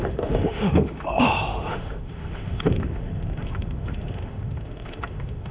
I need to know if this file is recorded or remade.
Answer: remade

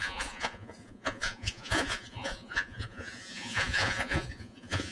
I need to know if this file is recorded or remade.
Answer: remade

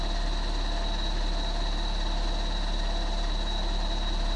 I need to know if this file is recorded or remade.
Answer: recorded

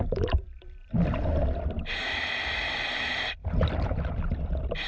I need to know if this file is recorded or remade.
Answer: remade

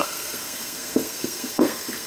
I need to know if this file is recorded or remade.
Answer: remade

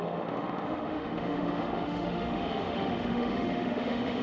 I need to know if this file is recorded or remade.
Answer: remade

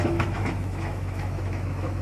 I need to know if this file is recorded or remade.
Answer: remade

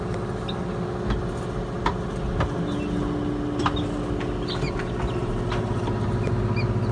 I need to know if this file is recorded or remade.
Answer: recorded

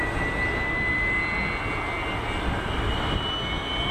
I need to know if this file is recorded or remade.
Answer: recorded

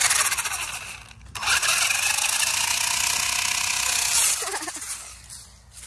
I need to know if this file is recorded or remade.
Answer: recorded